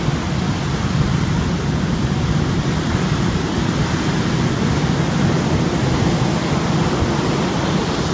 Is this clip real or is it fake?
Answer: real